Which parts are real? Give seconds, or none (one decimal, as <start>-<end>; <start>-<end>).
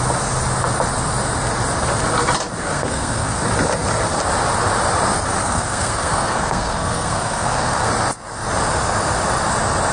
0.0-2.6; 3.4-5.4; 7.9-9.9